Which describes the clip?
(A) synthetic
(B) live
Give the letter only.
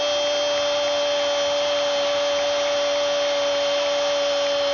B